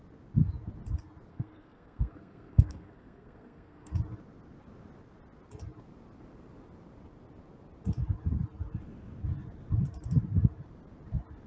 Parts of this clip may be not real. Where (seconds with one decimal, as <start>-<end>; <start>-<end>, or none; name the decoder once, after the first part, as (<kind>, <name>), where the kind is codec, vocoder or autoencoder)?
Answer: 1.3-3.9 (codec, SNAC)